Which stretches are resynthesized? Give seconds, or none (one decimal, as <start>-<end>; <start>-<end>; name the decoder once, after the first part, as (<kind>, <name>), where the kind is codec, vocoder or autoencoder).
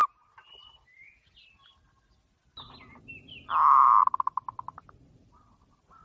none